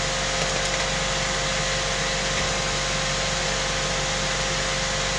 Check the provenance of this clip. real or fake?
real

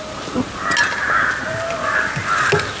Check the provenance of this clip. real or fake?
real